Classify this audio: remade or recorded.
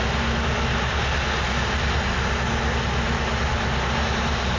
recorded